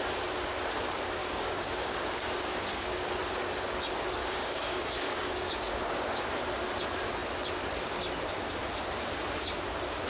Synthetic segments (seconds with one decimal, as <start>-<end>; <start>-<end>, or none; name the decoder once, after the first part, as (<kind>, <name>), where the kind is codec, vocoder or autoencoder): 1.2-3.1 (codec, DAC); 4.2-6.2